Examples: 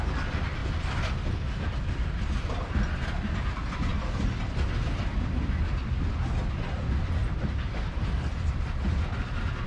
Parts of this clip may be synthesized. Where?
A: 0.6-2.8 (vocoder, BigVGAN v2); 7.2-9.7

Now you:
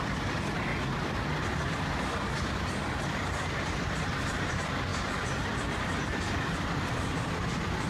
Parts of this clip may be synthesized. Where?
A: 0.0-0.7 (vocoder, BigVGAN v2); 1.7-7.9

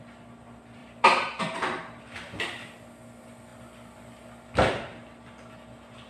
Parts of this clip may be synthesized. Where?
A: 0.8-2.0 (vocoder, BigVGAN v2)

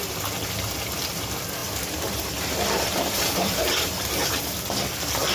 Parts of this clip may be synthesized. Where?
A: 1.6-4.4 (vocoder, BigVGAN v2)

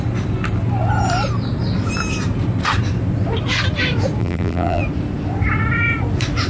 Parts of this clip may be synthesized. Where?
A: 4.2-4.8 (vocoder, BigVGAN v2)